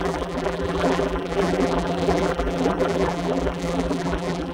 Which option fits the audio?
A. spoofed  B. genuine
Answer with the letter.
A